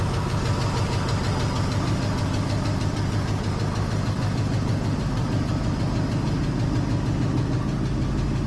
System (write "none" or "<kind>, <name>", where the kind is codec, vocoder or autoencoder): none